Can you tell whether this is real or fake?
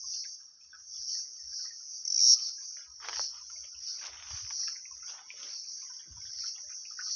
real